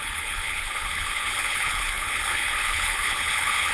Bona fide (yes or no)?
no